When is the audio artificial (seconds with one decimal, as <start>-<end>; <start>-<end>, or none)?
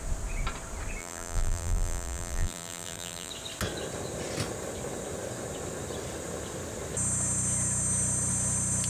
1.0-3.3